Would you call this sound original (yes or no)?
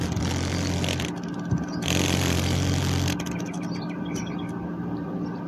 yes